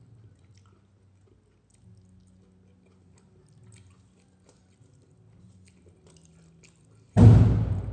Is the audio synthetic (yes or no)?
no